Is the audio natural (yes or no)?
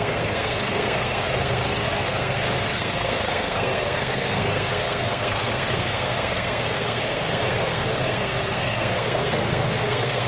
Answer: no